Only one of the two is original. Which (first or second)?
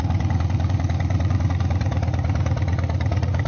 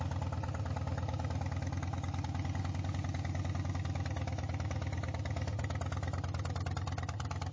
second